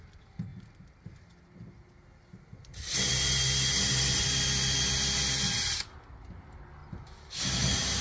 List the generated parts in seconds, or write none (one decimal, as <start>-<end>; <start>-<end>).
none